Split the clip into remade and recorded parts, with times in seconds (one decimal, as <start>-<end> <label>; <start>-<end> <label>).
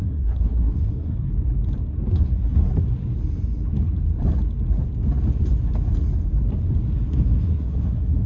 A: 0.0-1.3 remade; 1.3-2.1 recorded; 2.1-2.7 remade; 2.7-7.1 recorded; 7.1-8.3 remade